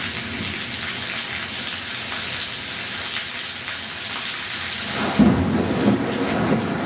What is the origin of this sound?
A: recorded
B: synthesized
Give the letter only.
A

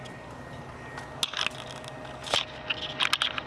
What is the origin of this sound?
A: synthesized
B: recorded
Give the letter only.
B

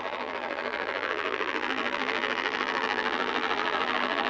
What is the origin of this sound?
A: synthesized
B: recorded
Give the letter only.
A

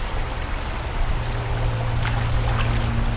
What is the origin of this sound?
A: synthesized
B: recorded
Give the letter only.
B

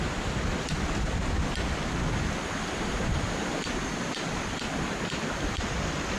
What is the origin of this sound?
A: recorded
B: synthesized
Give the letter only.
A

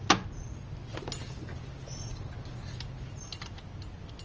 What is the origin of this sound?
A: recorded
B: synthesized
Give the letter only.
A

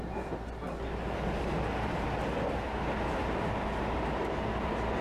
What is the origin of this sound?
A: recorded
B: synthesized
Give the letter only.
A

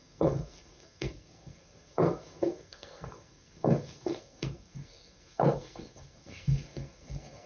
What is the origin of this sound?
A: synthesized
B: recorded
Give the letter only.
A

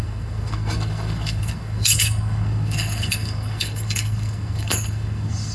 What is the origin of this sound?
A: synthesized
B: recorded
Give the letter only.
A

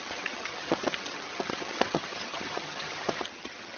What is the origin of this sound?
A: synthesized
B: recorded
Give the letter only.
A